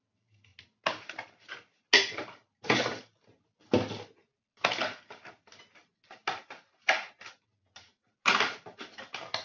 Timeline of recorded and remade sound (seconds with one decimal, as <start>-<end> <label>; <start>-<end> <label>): 0.0-9.4 recorded